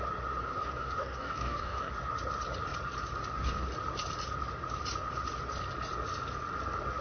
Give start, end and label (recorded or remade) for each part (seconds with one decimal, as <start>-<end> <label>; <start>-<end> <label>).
0.0-0.4 recorded; 0.4-1.9 remade; 1.9-7.0 recorded